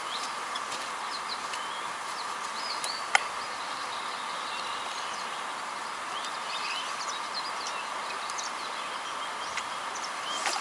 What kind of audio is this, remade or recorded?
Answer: recorded